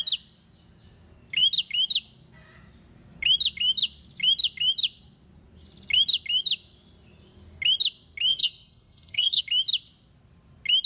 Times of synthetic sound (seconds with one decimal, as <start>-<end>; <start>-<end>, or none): 8.3-9.4